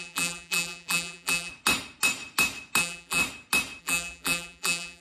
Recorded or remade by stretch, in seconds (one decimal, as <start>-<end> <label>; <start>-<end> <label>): 0.0-1.5 remade; 1.5-2.8 recorded; 2.8-3.2 remade; 3.2-3.8 recorded; 3.8-5.0 remade